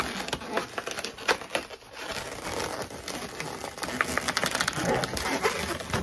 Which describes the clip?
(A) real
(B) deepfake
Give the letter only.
A